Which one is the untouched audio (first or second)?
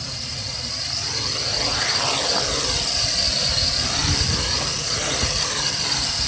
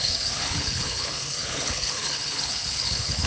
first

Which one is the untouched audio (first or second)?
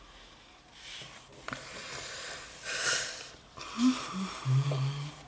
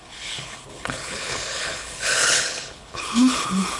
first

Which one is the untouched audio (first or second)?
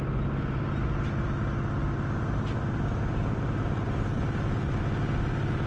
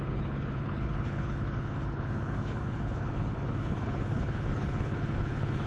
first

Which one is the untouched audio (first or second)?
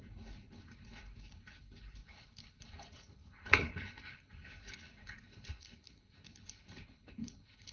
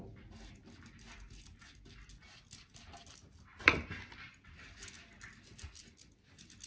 second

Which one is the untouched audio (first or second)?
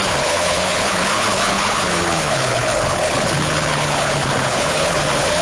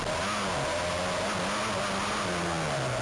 second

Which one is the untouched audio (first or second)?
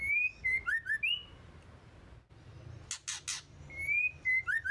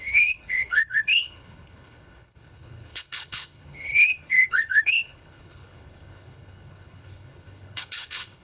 first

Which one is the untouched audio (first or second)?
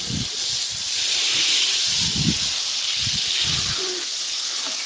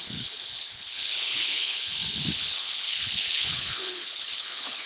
first